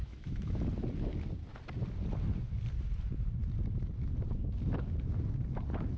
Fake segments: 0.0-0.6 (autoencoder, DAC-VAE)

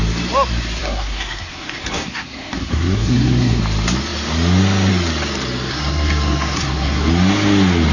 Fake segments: 0.8-3.6 (codec, SNAC); 5.7-7.1

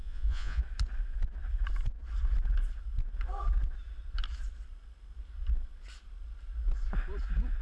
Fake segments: 0.0-0.6 (vocoder, Vocos)

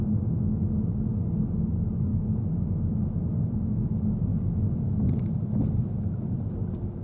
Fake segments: none

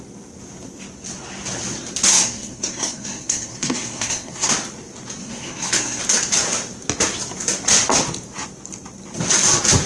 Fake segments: 2.1-4.5 (codec, SNAC); 5.2-6.0

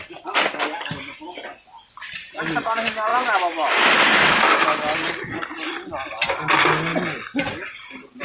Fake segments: none

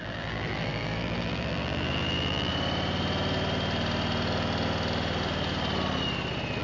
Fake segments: 0.0-2.5 (vocoder, BigVGAN v2)

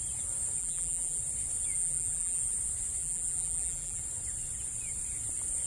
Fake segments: 0.6-1.2 (vocoder, BigVGAN v2); 1.8-2.4; 3.0-4.0